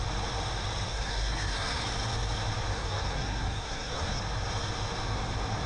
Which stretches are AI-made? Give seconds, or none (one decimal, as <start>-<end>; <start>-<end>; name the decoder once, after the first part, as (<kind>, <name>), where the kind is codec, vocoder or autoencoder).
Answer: 0.9-1.8 (codec, SNAC); 2.7-4.2